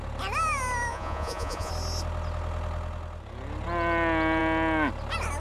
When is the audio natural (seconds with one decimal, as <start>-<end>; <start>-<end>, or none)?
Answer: 0.0-0.9; 1.7-5.4